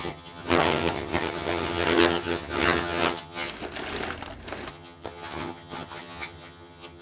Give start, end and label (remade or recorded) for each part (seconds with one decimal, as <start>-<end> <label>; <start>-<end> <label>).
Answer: 0.0-3.5 remade; 3.5-4.7 recorded; 4.7-7.0 remade